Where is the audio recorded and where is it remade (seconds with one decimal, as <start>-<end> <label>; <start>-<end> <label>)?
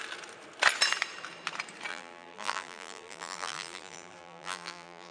0.0-1.9 recorded; 1.9-5.1 remade